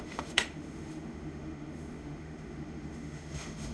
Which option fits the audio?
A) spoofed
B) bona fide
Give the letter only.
A